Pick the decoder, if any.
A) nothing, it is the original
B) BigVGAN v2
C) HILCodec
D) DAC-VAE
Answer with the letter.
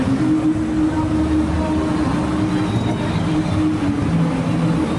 A